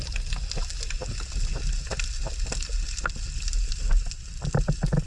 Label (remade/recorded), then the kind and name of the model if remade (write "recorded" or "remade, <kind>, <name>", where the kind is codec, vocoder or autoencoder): recorded